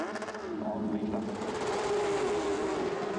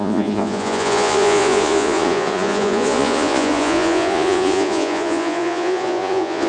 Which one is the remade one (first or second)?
second